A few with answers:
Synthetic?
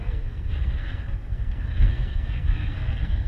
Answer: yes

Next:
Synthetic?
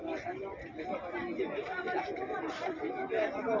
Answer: no